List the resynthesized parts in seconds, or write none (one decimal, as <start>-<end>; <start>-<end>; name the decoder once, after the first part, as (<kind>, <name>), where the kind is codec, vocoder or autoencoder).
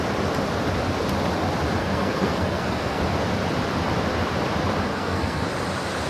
1.8-3.0 (codec, SNAC); 4.9-5.5